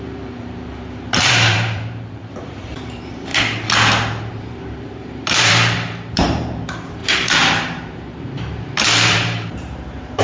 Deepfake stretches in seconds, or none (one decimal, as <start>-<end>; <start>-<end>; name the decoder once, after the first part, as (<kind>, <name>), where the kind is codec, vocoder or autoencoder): 0.0-3.3 (vocoder, BigVGAN v2); 4.3-10.2